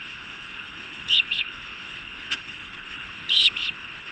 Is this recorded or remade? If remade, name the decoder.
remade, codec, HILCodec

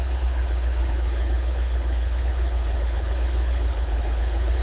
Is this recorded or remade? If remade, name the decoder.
remade, codec, HILCodec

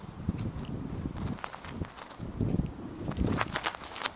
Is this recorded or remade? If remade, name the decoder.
recorded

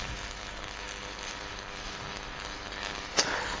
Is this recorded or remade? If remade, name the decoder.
remade, codec, HILCodec